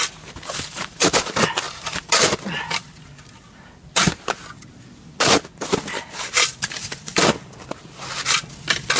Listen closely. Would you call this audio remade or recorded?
recorded